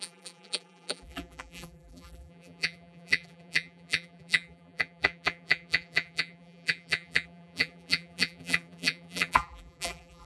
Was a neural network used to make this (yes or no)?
yes